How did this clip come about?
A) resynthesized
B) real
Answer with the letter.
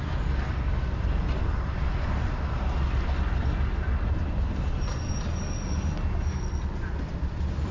B